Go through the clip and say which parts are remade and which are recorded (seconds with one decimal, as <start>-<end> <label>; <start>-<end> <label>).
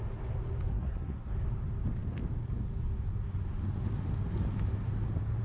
0.0-0.7 recorded; 0.7-1.3 remade; 1.3-5.4 recorded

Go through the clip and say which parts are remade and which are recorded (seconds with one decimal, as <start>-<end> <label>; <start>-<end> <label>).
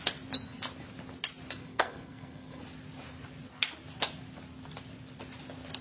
0.0-1.6 recorded; 1.6-2.6 remade; 2.6-5.8 recorded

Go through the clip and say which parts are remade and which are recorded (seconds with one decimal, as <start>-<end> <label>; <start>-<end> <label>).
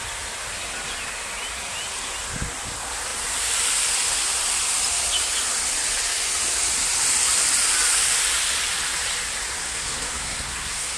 0.0-9.6 recorded; 9.6-11.0 remade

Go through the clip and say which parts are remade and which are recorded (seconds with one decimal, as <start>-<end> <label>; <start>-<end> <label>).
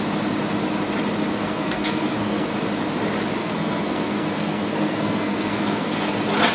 0.0-1.3 recorded; 1.3-2.5 remade; 2.5-3.4 recorded; 3.4-6.1 remade; 6.1-6.5 recorded